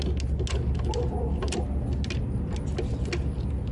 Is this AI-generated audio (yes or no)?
no